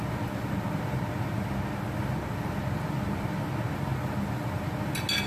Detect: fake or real real